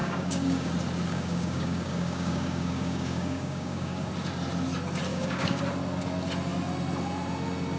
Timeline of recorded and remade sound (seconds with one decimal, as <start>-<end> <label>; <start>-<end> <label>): 0.0-0.7 remade; 0.7-1.1 recorded; 1.1-4.1 remade; 4.1-5.1 recorded; 5.1-5.6 remade; 5.6-7.8 recorded